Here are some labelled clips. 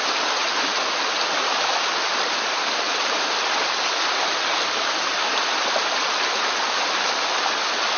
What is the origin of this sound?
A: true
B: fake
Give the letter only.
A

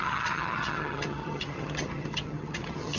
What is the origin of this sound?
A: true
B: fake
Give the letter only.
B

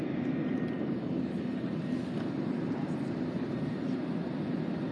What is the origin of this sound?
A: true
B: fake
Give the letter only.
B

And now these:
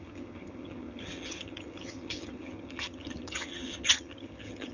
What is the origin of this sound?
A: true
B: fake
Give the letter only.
B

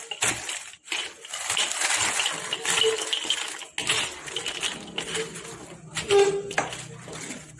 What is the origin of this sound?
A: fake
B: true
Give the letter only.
B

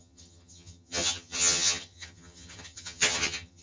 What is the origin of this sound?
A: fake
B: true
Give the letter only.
A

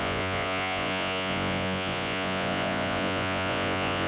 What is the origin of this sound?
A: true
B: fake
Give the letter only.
B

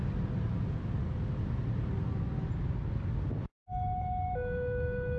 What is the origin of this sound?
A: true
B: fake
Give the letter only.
A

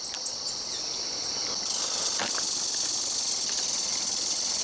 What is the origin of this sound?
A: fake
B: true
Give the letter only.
B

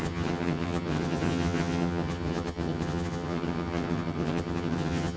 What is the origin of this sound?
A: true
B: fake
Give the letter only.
B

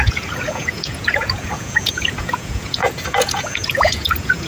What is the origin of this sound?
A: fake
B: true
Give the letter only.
A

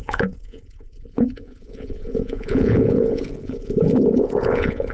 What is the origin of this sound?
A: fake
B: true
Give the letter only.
A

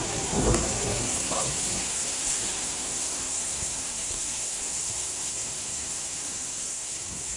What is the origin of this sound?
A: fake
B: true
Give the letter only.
A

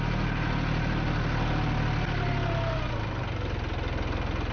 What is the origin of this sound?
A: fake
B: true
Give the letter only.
B